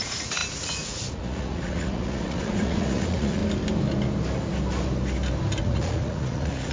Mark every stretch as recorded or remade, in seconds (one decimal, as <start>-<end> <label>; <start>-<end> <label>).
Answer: 0.0-3.4 remade; 3.4-5.6 recorded; 5.6-6.7 remade